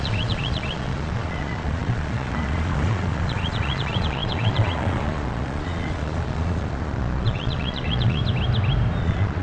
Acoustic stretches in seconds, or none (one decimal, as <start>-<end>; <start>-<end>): 8.2-9.0